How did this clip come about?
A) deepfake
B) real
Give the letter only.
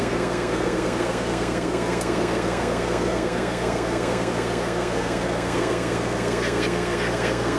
A